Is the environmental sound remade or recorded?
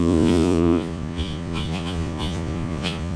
remade